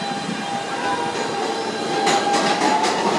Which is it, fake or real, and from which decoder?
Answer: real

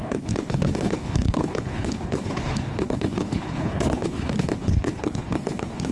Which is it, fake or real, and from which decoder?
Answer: fake, codec, HILCodec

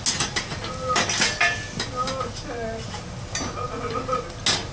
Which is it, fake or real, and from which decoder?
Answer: real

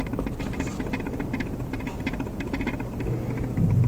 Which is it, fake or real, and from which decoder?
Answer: real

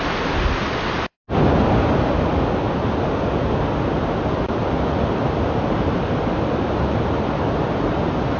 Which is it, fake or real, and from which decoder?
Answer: real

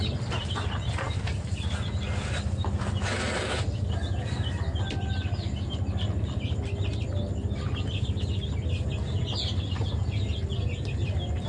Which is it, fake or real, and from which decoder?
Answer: real